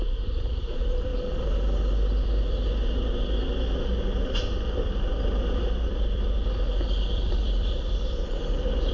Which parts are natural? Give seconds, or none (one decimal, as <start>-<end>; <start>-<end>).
1.1-4.9